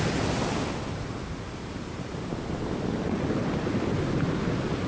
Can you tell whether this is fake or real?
real